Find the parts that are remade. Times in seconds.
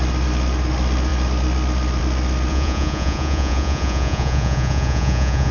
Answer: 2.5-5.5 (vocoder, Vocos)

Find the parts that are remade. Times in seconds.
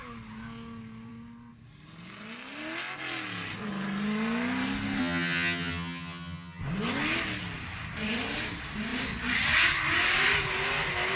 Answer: 5.0-6.6 (vocoder, HiFi-GAN)